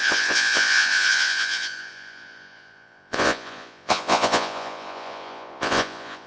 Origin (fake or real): fake